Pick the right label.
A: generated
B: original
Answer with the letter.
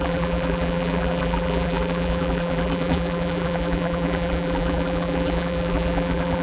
A